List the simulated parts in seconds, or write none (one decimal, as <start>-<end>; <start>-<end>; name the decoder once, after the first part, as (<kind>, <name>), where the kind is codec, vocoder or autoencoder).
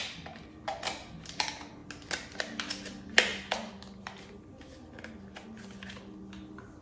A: none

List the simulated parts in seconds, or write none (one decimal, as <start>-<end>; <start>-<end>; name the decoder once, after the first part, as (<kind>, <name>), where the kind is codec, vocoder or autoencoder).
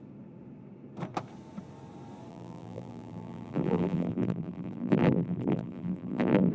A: 2.3-6.5 (vocoder, BigVGAN v2)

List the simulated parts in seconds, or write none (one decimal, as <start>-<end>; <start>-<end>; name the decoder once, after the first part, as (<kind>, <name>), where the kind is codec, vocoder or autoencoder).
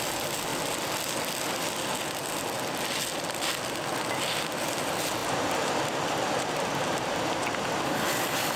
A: 5.2-7.2 (vocoder, BigVGAN v2)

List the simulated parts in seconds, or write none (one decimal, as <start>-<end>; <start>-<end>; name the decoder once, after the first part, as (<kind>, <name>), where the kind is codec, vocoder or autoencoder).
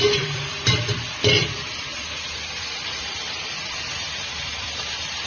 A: 0.0-5.3 (vocoder, BigVGAN v2)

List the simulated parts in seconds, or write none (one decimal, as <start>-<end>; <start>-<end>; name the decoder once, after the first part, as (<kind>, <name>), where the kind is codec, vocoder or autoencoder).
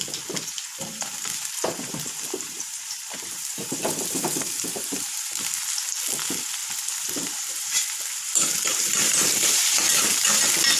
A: 0.7-5.4 (vocoder, BigVGAN v2); 6.6-10.4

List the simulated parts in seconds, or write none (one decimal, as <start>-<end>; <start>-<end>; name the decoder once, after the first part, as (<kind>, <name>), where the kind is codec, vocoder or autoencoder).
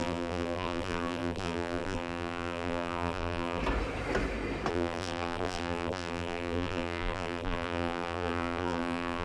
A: 0.0-3.6 (vocoder, BigVGAN v2); 4.7-9.2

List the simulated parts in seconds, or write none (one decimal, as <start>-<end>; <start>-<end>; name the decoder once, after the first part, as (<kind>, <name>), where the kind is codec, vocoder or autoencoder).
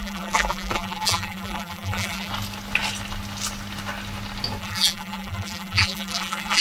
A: 0.0-2.3 (vocoder, BigVGAN v2); 4.6-6.6